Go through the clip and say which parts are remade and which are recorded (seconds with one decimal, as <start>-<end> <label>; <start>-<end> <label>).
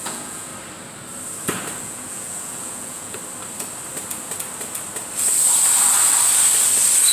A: 0.0-0.5 remade; 0.5-1.8 recorded; 1.8-3.2 remade; 3.2-7.1 recorded